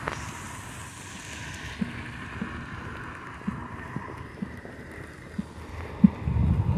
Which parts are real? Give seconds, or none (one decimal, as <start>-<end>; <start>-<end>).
0.0-3.6; 4.9-6.8